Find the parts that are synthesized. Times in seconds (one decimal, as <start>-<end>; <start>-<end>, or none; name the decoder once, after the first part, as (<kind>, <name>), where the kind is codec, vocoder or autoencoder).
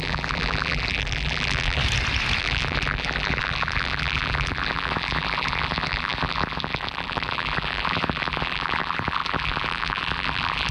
0.0-1.8 (vocoder, BigVGAN v2); 2.4-10.7